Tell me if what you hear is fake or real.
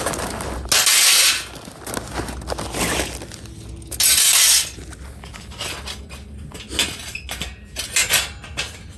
real